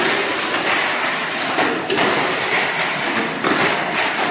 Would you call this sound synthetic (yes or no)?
no